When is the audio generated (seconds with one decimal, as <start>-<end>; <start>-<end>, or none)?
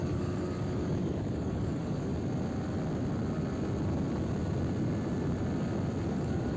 0.0-2.1; 6.1-6.6